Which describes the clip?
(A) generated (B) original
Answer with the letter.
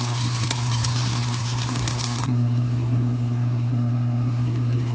A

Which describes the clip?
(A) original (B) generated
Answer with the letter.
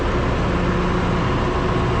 A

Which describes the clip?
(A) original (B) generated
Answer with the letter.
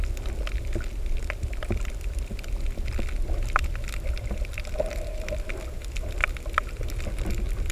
A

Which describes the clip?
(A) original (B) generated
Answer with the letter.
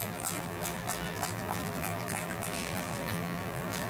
B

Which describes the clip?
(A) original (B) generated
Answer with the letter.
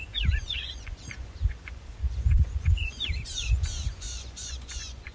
B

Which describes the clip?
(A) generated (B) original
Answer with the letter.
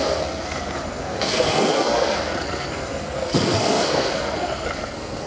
A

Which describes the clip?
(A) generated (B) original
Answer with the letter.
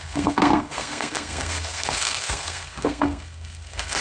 A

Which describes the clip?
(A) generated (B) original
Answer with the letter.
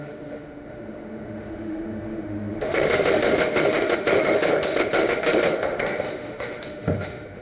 A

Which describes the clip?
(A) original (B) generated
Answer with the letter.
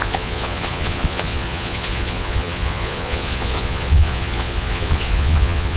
B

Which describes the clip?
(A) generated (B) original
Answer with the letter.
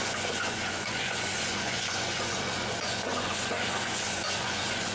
A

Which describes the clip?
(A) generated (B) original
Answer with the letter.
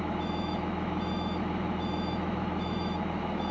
A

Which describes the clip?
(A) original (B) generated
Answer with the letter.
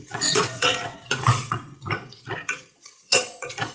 B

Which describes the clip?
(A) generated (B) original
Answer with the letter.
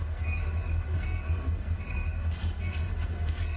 A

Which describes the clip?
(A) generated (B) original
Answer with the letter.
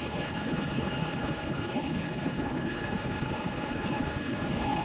A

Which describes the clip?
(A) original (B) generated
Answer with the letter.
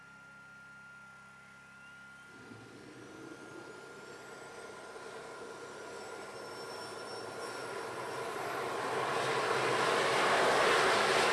A